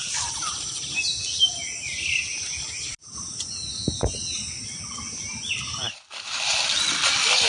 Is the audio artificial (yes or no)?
no